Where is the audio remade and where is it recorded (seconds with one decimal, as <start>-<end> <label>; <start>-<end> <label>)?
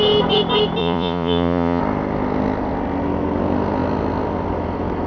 0.0-0.8 recorded; 0.8-1.8 remade; 1.8-5.1 recorded